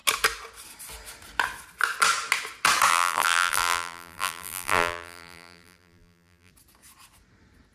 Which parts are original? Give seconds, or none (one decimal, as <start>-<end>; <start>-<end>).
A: 0.0-2.9; 6.5-7.7